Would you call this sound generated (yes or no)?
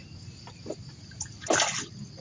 no